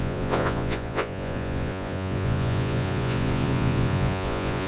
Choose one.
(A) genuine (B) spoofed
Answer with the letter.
B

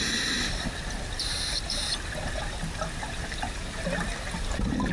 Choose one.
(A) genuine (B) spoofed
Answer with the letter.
A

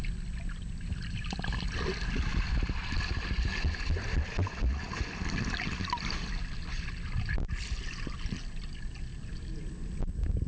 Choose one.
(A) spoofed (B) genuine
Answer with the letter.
B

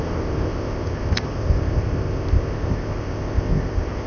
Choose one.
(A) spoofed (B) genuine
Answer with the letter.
A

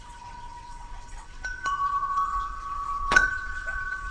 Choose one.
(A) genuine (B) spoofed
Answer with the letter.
B